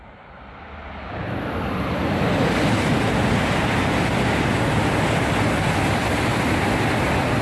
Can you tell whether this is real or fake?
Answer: real